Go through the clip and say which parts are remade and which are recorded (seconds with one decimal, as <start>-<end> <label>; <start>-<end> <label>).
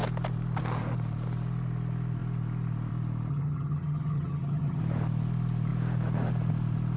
0.0-3.3 recorded; 3.3-4.8 remade; 4.8-7.0 recorded